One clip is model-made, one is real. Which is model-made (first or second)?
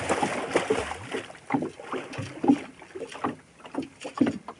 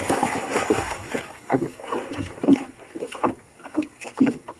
second